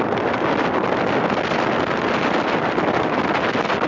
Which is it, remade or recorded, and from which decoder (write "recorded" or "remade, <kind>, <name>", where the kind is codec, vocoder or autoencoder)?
recorded